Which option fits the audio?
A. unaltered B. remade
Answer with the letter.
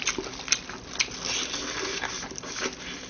A